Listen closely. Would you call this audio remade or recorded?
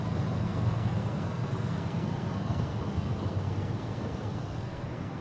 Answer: remade